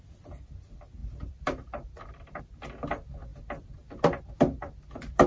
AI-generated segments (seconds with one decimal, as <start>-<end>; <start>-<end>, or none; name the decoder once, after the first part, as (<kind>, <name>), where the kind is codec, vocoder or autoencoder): 1.0-2.4 (vocoder, BigVGAN v2)